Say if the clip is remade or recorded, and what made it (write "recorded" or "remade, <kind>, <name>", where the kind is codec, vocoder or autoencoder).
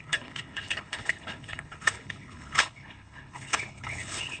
remade, codec, HILCodec